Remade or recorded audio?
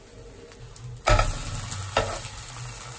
recorded